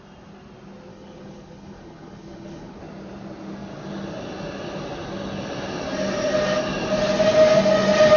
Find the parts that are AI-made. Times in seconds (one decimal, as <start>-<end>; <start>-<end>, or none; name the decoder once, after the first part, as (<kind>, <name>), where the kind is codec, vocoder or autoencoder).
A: 0.9-2.8 (codec, HILCodec)